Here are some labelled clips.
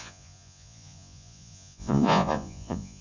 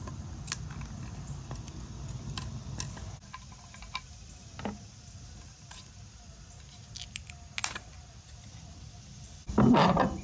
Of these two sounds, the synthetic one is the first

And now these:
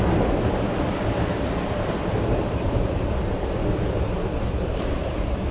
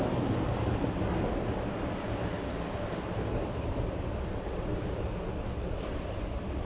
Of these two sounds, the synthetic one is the first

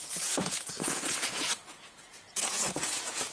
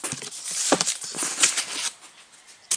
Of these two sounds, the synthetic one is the first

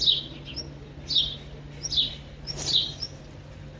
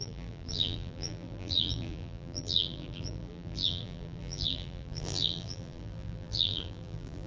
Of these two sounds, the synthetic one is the second